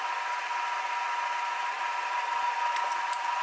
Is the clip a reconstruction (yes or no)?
no